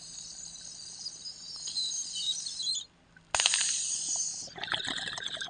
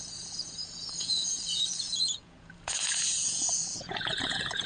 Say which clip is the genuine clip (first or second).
first